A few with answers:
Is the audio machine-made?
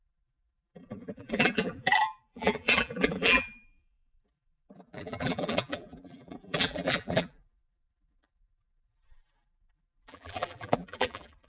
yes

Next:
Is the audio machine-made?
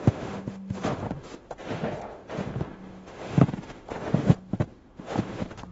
yes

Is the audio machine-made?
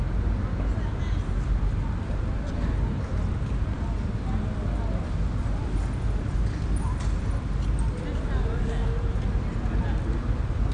no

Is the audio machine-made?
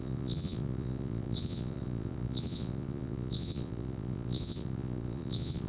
yes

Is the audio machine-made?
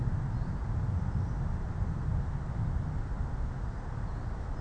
no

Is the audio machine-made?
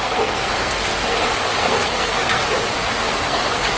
yes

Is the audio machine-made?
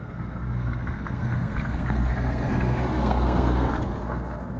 yes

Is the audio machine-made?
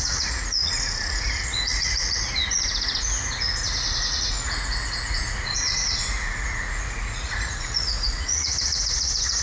yes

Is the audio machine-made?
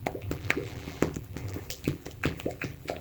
yes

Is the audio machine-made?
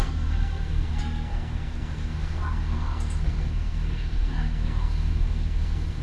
yes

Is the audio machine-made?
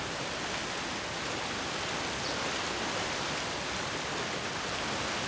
no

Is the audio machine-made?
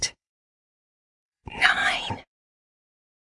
yes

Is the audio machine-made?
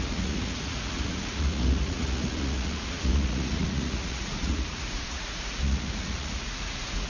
yes